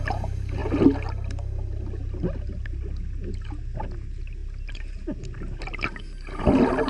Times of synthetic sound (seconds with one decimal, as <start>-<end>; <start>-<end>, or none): none